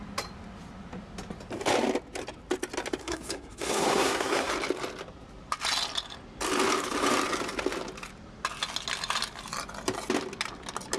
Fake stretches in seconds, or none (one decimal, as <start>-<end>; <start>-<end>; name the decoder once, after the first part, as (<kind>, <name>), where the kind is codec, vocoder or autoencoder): 3.0-4.5 (codec, SNAC)